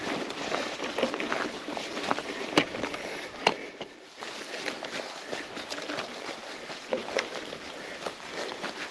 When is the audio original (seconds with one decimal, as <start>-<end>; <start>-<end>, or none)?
none